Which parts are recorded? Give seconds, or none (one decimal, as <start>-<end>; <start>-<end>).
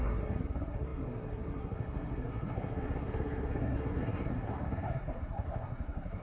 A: none